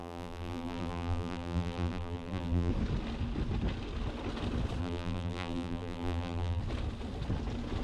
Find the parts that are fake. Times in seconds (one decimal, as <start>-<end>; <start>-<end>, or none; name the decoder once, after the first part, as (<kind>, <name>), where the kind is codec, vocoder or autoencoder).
0.0-2.7 (vocoder, BigVGAN v2); 4.8-6.6